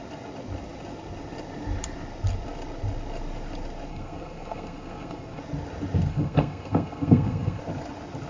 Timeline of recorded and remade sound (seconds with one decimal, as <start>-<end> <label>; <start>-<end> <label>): 0.0-3.9 recorded; 3.9-5.4 remade; 5.4-6.1 recorded; 6.1-7.6 remade; 7.6-8.3 recorded